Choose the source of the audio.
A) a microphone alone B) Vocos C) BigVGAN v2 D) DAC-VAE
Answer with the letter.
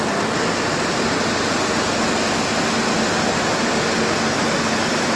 A